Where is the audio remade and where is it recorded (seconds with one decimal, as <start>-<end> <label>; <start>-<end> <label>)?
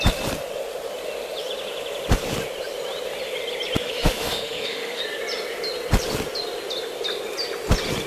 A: 0.0-3.8 recorded; 3.8-5.0 remade; 5.0-8.1 recorded